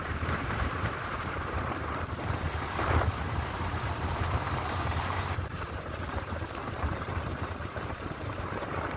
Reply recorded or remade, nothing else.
remade